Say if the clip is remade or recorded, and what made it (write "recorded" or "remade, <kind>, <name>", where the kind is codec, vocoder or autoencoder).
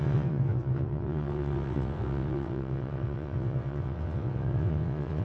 remade, vocoder, WaveNeXt